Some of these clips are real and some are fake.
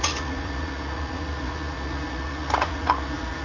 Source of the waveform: fake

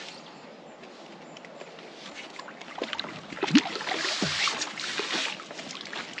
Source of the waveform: real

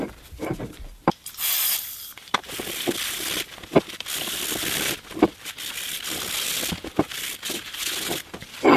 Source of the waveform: real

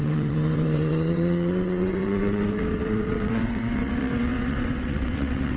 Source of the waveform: fake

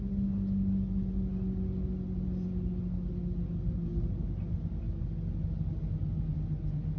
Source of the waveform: real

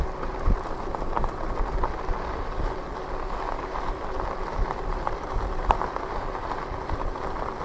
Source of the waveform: real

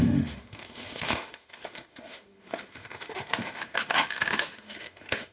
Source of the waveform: fake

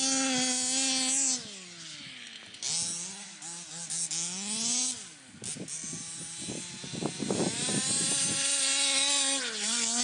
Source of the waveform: real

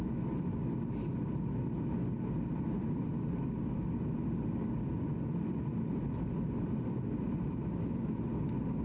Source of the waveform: real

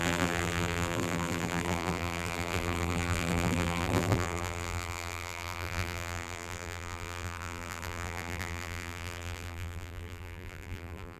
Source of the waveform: fake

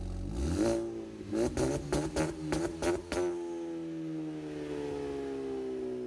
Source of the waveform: real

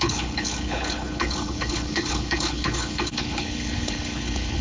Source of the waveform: fake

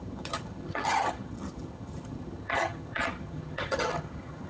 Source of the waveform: fake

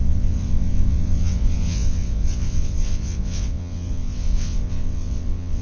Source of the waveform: fake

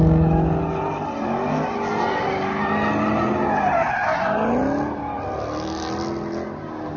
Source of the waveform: real